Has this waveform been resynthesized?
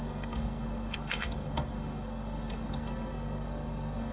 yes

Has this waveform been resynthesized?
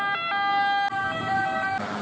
no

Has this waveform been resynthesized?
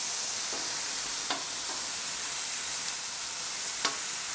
no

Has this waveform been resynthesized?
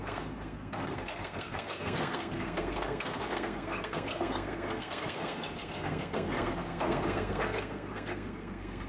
yes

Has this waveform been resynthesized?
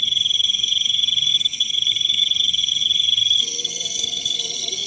yes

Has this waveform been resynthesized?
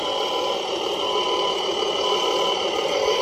no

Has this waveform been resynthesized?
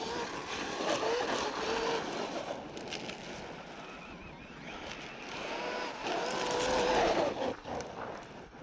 no